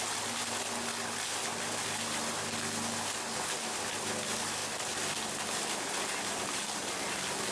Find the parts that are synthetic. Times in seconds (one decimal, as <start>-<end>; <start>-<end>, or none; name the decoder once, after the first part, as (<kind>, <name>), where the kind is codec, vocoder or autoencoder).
none